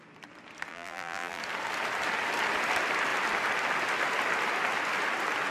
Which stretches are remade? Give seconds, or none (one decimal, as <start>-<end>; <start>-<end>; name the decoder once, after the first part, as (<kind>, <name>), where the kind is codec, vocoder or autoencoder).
0.7-1.4 (vocoder, BigVGAN v2)